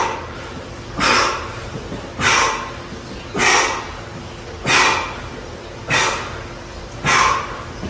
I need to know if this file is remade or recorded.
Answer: recorded